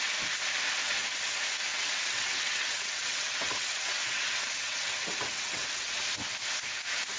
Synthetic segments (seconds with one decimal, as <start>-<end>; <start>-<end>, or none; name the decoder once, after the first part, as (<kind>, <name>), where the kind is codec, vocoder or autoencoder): 1.7-6.0 (vocoder, WaveNeXt)